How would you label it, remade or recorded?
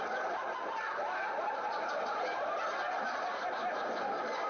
recorded